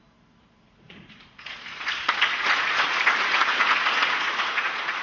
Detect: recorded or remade remade